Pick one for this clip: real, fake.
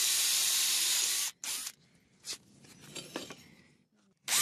real